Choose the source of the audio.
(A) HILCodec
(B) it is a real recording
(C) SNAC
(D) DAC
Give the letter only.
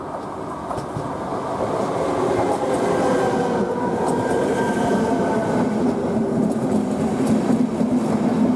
B